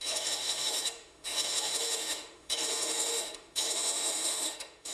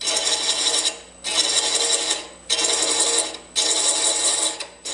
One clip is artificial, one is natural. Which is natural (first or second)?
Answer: second